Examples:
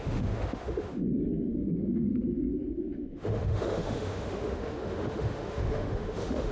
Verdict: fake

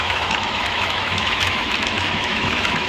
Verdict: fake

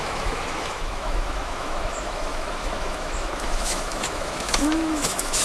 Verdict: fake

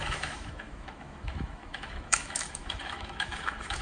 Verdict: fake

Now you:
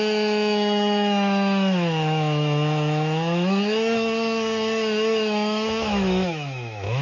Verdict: fake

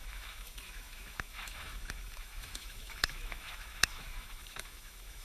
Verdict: fake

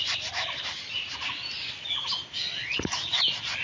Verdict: real